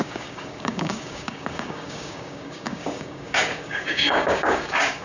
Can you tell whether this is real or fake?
fake